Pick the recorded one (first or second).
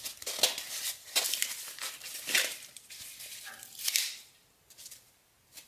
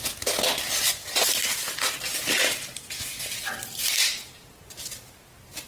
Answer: second